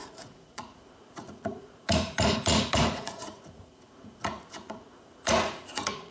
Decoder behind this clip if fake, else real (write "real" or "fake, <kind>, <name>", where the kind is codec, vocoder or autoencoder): fake, vocoder, Vocos